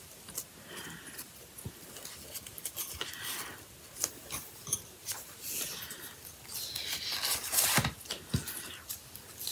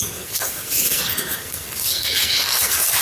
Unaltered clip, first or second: first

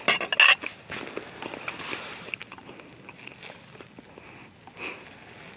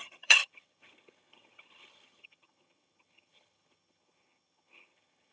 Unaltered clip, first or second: first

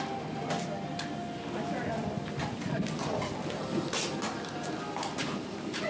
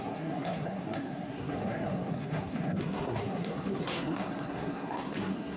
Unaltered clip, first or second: first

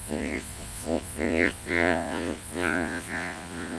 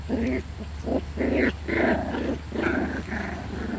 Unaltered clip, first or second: second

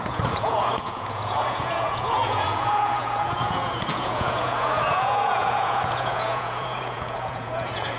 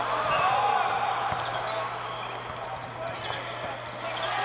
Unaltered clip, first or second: second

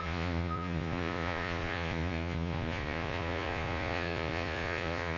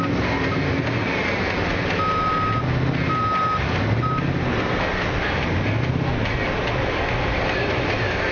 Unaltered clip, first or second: second